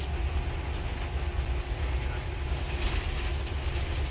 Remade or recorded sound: recorded